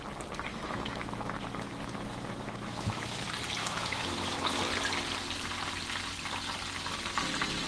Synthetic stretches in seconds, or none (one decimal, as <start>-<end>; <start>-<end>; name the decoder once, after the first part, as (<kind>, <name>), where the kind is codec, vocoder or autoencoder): 0.5-3.2 (autoencoder, DAC-VAE); 3.6-4.5